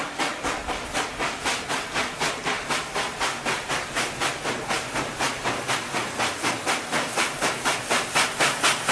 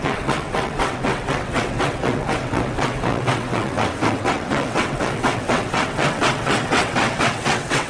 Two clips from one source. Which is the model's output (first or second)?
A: second